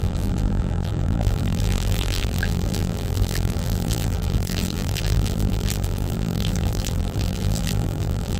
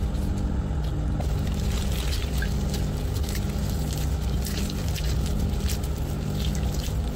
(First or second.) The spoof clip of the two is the first